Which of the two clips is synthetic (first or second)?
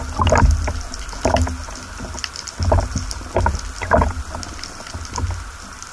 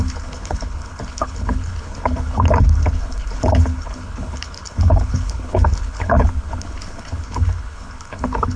second